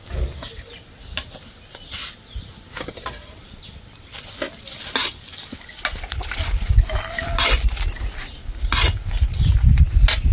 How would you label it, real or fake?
real